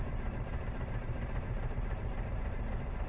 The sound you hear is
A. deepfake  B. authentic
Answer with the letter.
A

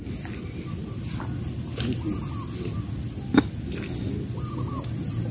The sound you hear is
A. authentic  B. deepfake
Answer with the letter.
A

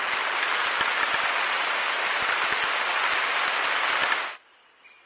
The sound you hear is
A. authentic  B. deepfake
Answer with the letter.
A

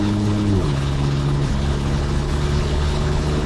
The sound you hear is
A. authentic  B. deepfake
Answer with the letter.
B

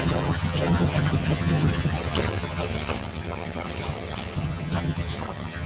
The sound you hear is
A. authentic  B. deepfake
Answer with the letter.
B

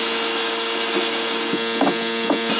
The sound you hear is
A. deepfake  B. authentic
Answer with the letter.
B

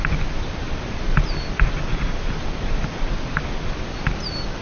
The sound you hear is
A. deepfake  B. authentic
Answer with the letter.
B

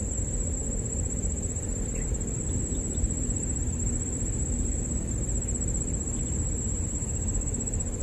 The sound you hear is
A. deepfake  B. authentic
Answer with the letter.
A